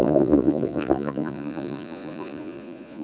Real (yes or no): no